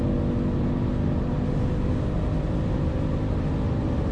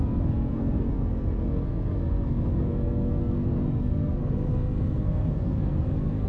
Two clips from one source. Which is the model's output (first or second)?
second